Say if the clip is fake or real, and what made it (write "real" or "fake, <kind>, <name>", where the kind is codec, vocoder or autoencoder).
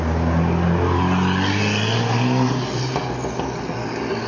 real